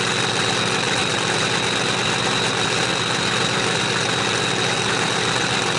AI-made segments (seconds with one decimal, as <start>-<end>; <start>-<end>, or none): none

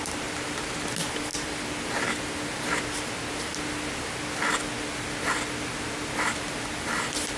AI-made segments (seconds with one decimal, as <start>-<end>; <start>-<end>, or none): none

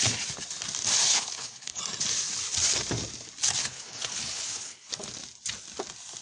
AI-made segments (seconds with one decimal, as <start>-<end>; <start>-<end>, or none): 1.1-1.8; 3.6-4.9

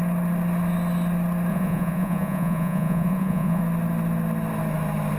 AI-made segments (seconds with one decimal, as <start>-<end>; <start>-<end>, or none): 1.5-3.6

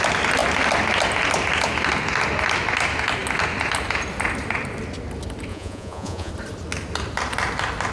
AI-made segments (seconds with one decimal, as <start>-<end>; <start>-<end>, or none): 5.5-6.3

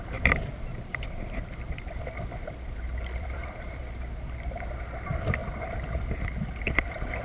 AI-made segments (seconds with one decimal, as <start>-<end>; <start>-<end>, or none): 0.0-5.4; 6.6-7.2

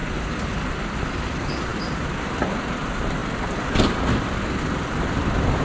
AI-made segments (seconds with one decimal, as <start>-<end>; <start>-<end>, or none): 1.7-2.2

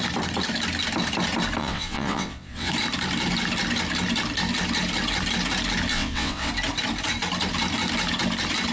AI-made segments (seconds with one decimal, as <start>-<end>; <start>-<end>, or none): 1.6-2.7; 5.9-6.5